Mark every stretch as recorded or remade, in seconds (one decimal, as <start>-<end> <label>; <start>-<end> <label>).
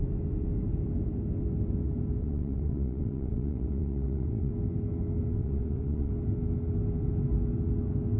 0.0-2.2 recorded; 2.2-4.5 remade; 4.5-5.4 recorded; 5.4-6.1 remade; 6.1-8.2 recorded